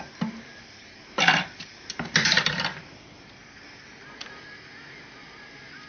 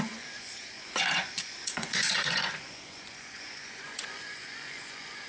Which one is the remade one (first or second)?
second